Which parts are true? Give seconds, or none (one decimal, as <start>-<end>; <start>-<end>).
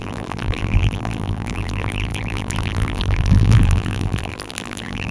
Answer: none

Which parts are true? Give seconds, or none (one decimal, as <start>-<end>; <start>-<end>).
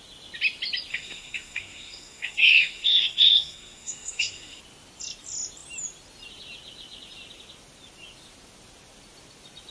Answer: 0.0-0.9; 4.6-9.7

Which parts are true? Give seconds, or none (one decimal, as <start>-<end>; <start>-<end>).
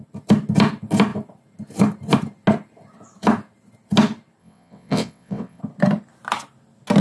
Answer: 0.0-4.4; 5.6-7.0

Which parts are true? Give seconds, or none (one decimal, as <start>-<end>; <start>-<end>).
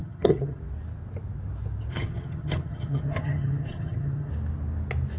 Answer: 0.6-1.9; 4.3-5.2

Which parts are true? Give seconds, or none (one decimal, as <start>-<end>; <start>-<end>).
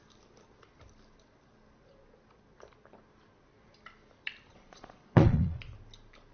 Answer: 0.0-4.5; 5.6-6.3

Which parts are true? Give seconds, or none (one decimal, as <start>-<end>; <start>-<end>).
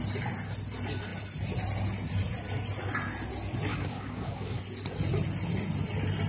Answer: 0.0-3.7; 4.6-6.3